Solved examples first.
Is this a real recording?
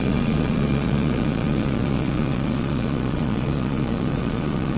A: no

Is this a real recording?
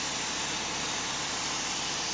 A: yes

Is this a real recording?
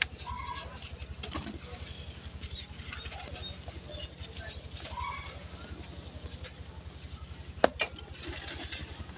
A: yes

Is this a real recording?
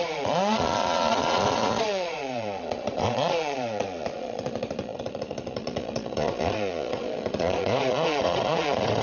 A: no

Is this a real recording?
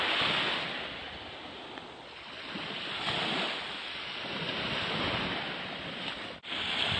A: yes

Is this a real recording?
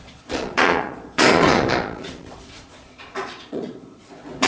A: no